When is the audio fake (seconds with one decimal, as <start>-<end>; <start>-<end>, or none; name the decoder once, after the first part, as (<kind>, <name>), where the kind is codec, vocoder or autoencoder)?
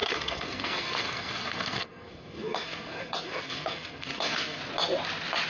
0.0-4.6 (codec, SNAC)